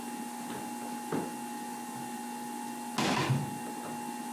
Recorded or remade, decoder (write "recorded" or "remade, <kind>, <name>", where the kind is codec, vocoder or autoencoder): recorded